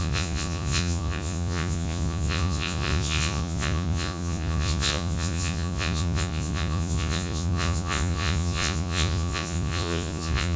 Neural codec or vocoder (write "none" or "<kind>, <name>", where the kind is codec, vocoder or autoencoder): vocoder, Vocos